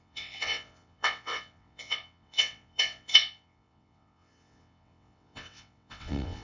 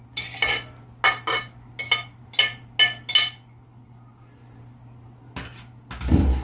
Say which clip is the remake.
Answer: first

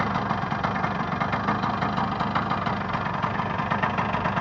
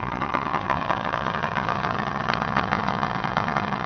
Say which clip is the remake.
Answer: second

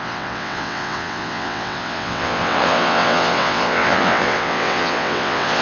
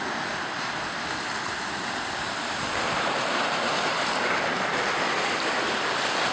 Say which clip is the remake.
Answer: first